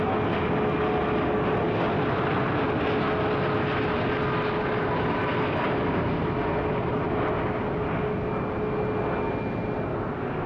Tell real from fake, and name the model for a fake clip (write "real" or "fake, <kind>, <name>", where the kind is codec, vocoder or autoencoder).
real